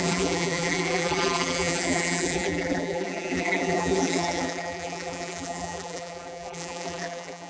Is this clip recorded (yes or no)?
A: no